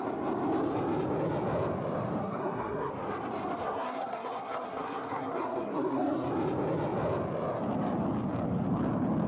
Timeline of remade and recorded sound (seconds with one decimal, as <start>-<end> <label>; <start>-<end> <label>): 0.0-2.2 recorded; 2.2-2.9 remade; 2.9-3.6 recorded; 3.6-6.3 remade; 6.3-9.3 recorded

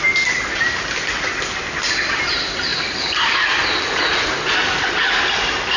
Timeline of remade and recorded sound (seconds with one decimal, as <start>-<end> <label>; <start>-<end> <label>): 0.0-5.8 recorded

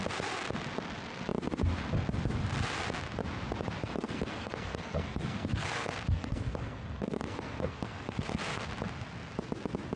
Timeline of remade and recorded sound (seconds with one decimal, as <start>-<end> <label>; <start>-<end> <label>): 0.0-3.8 recorded; 3.8-8.7 remade; 8.7-10.0 recorded

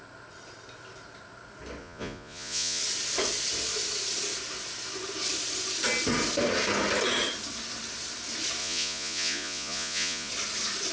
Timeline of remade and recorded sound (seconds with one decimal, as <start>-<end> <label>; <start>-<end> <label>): 0.0-1.8 recorded; 1.8-2.8 remade; 2.8-8.6 recorded; 8.6-10.3 remade; 10.3-10.9 recorded

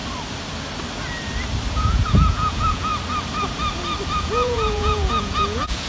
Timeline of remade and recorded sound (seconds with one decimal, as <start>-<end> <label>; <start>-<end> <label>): 0.0-1.7 recorded; 1.7-2.9 remade; 2.9-4.2 recorded; 4.2-5.9 remade

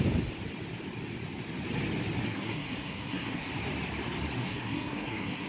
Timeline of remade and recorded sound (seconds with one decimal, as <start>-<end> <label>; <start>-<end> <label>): 0.0-2.2 recorded; 2.2-3.5 remade; 3.5-4.4 recorded; 4.4-5.5 remade